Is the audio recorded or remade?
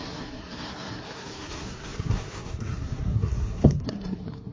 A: remade